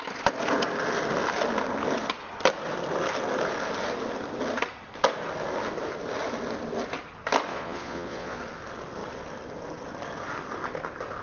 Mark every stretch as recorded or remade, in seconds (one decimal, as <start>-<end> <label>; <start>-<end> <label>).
0.0-7.5 recorded; 7.5-8.4 remade; 8.4-11.2 recorded